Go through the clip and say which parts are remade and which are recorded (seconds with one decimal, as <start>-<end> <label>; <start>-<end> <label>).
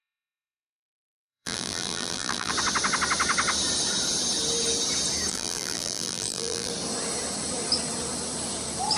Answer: 0.0-2.5 remade; 2.5-5.3 recorded; 5.3-6.7 remade; 6.7-9.0 recorded